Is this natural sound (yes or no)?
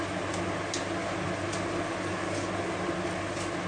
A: yes